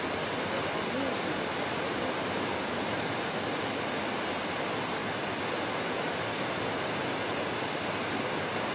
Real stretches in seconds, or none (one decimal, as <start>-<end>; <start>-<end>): 0.0-8.7